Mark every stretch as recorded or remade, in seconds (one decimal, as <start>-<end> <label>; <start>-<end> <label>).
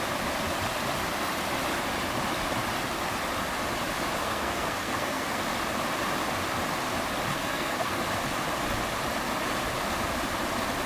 0.0-4.2 recorded; 4.2-5.4 remade; 5.4-7.3 recorded; 7.3-8.0 remade; 8.0-10.9 recorded